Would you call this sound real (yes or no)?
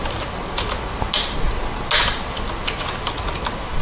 yes